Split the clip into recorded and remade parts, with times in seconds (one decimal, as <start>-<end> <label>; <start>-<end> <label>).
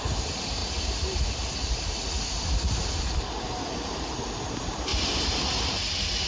0.0-0.6 remade; 0.6-3.8 recorded; 3.8-4.9 remade; 4.9-6.3 recorded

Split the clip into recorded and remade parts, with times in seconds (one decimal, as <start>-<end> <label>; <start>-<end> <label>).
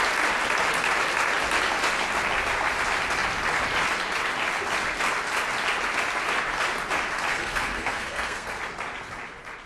0.0-7.3 recorded; 7.3-8.6 remade; 8.6-9.7 recorded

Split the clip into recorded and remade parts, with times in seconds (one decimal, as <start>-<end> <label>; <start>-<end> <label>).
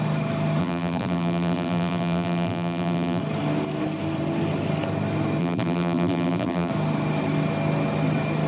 0.0-0.6 recorded; 0.6-3.2 remade; 3.2-5.4 recorded; 5.4-6.7 remade; 6.7-8.5 recorded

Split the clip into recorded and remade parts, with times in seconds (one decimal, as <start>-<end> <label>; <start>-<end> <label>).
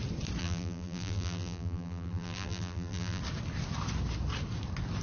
0.0-0.4 recorded; 0.4-3.2 remade; 3.2-5.0 recorded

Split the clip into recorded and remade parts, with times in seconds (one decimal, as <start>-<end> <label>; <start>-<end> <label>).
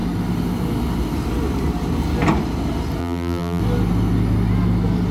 0.0-3.0 recorded; 3.0-3.6 remade; 3.6-5.1 recorded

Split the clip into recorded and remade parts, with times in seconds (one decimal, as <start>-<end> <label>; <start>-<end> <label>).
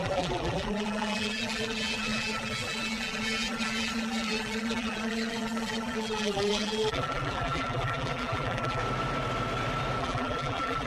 0.0-8.8 remade; 8.8-10.0 recorded; 10.0-10.9 remade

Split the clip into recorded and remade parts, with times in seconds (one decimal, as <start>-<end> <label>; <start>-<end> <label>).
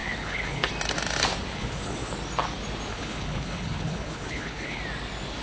0.0-0.7 remade; 0.7-1.5 recorded; 1.5-2.1 remade; 2.1-2.9 recorded; 2.9-4.8 remade; 4.8-5.4 recorded